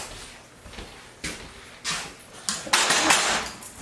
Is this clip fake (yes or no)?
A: no